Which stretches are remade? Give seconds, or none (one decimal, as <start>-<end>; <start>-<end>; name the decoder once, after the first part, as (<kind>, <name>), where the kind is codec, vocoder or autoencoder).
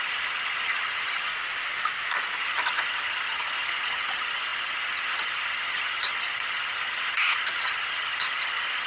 0.0-1.3 (vocoder, HiFi-GAN); 2.4-8.9